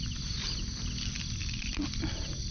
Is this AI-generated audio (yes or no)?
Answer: no